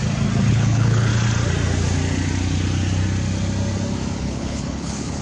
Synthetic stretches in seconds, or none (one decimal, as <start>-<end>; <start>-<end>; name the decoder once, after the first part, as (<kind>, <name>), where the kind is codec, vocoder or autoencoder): 0.5-1.1 (codec, HILCodec); 4.2-5.2